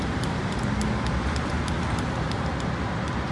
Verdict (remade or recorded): recorded